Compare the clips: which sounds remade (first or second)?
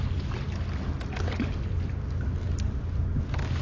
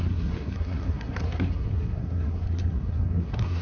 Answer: second